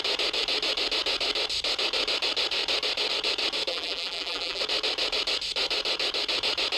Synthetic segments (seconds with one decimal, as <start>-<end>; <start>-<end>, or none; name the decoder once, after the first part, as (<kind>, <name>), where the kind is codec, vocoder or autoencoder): 3.7-4.6 (vocoder, BigVGAN v2)